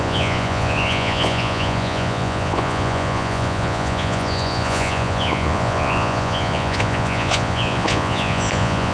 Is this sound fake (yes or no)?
yes